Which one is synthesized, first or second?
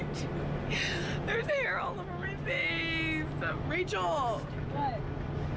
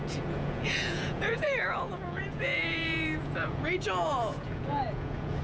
second